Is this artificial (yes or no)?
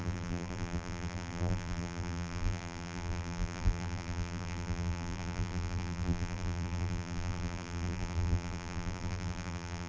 yes